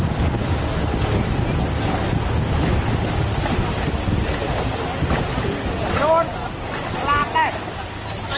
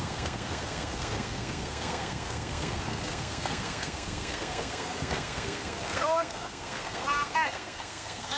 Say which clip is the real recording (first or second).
first